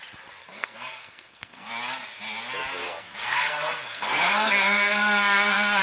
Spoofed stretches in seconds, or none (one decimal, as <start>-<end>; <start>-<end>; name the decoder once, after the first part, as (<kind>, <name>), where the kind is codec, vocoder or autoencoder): 0.4-1.7 (codec, SNAC); 2.8-5.8